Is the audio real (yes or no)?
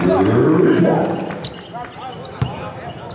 yes